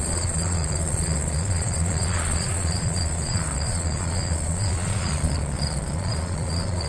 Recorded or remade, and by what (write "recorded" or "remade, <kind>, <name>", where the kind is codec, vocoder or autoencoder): remade, vocoder, Vocos